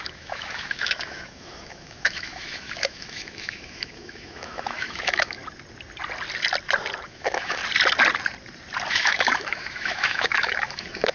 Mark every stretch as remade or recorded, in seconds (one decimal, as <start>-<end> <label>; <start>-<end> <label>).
0.0-5.4 remade; 5.4-7.0 recorded; 7.0-7.6 remade; 7.6-8.9 recorded; 8.9-11.1 remade